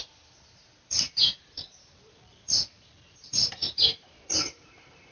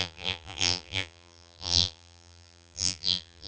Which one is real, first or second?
first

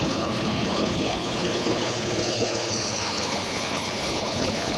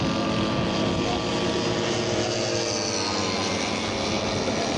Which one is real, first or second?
second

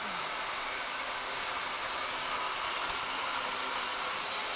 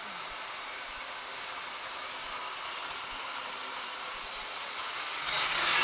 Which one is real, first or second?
first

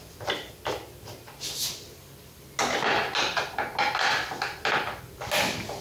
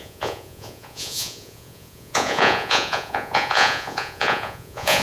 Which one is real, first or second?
first